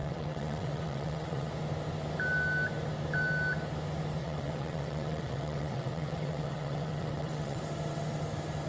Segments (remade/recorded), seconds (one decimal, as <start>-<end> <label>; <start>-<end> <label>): 0.0-1.5 remade; 1.5-4.2 recorded; 4.2-7.6 remade; 7.6-8.7 recorded